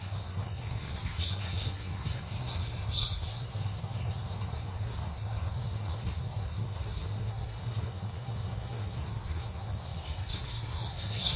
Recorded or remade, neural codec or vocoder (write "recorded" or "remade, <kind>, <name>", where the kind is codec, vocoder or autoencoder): remade, codec, SNAC